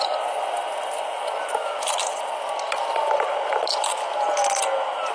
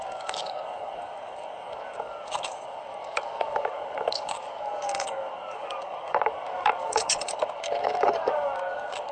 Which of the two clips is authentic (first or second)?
first